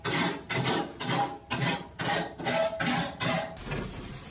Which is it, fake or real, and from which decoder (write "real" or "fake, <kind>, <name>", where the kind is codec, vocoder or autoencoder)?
real